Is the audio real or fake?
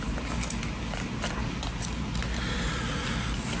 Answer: real